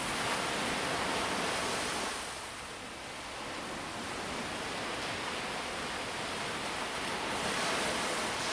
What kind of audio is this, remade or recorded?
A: recorded